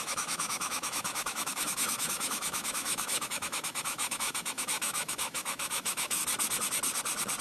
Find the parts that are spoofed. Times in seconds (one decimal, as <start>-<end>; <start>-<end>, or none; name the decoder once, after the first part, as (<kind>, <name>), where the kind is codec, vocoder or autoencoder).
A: 0.0-6.2 (autoencoder, DAC-VAE)